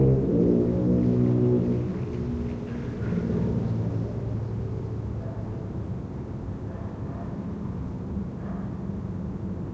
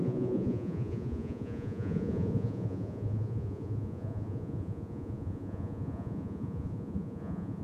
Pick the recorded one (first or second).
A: first